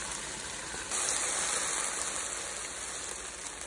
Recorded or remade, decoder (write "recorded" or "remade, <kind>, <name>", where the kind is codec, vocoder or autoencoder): recorded